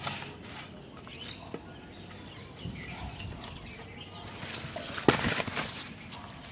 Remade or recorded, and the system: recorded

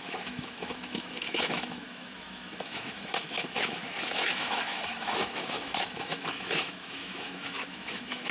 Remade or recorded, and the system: remade, autoencoder, DAC-VAE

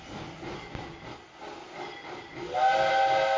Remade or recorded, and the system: recorded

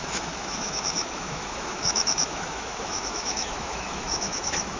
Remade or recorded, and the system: remade, autoencoder, DAC-VAE